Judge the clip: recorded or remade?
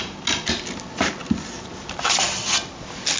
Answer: recorded